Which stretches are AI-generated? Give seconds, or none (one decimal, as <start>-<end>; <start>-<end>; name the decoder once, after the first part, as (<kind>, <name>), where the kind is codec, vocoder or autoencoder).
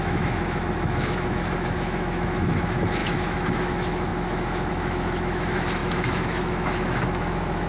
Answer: 0.0-7.7 (autoencoder, DAC-VAE)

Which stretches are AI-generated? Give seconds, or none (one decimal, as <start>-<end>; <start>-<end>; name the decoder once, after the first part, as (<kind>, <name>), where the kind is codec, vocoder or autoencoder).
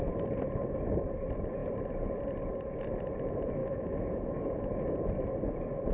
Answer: 3.6-4.7 (autoencoder, DAC-VAE)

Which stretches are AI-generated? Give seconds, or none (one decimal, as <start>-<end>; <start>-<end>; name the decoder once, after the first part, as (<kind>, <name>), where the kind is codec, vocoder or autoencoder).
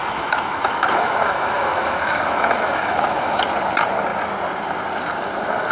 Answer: 0.0-3.4 (autoencoder, DAC-VAE)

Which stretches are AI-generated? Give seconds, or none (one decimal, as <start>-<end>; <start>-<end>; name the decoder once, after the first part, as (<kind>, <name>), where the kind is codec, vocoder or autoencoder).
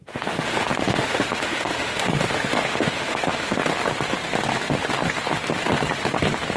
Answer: 0.0-3.6 (autoencoder, DAC-VAE)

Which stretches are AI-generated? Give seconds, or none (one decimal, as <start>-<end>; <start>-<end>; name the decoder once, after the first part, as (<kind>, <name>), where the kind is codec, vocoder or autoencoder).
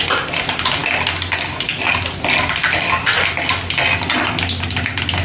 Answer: none